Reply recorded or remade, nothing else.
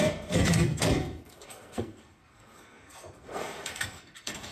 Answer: remade